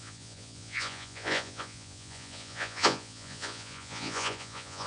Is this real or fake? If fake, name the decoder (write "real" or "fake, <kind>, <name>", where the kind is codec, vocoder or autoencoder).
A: fake, vocoder, Vocos